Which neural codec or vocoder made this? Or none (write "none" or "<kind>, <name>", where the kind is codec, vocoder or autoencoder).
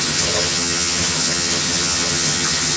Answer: vocoder, HiFi-GAN